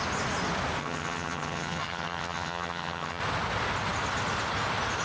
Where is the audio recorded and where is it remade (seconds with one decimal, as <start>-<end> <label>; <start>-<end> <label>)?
0.0-0.8 recorded; 0.8-3.2 remade; 3.2-5.0 recorded